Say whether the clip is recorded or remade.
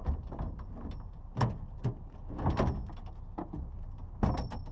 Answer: recorded